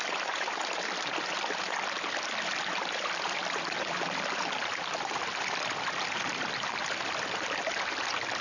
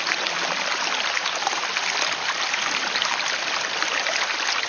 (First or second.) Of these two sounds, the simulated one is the first